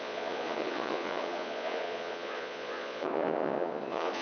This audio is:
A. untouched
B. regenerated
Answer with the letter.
B